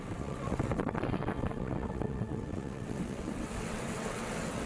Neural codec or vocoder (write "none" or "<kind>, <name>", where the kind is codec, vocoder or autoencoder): vocoder, WaveNeXt